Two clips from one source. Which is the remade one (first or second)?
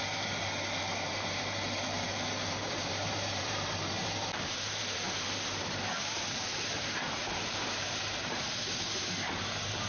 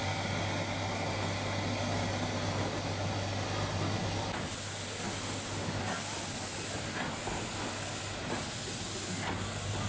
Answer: first